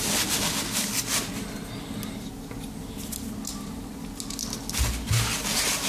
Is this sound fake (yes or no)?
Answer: no